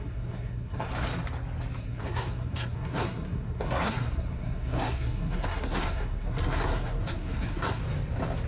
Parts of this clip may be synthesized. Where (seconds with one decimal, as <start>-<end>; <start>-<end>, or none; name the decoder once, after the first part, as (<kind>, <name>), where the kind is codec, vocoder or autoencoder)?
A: 0.0-0.9 (codec, SNAC); 1.8-7.8